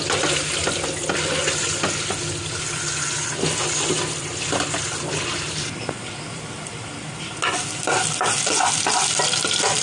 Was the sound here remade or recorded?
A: recorded